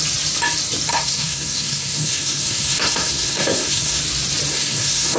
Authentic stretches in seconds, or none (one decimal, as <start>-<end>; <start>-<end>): 0.0-0.9; 4.0-4.5